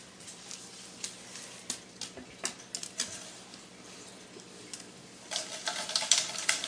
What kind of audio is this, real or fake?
real